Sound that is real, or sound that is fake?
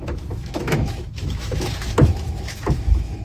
fake